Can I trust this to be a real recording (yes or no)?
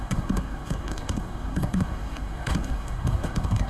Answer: no